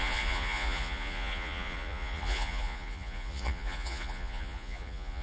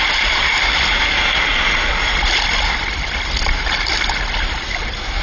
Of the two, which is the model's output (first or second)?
first